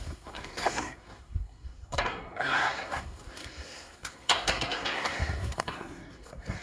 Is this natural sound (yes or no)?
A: no